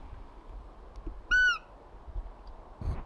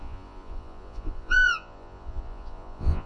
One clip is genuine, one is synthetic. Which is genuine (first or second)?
first